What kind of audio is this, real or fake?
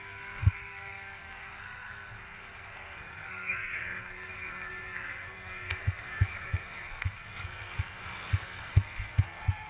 fake